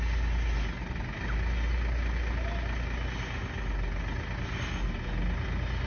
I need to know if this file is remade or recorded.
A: recorded